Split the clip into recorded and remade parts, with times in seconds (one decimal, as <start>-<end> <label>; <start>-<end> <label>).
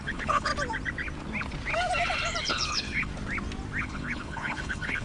0.0-0.5 remade; 0.5-2.4 recorded; 2.4-3.1 remade; 3.1-3.8 recorded; 3.8-5.0 remade